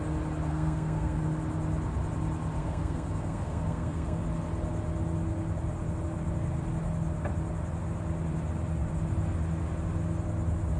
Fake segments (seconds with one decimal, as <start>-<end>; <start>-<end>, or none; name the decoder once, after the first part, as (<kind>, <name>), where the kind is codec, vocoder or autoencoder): 0.5-1.2 (codec, SNAC); 2.6-4.2